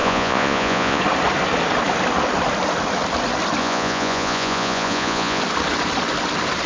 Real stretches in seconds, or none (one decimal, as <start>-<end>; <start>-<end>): 1.0-3.6; 5.4-6.7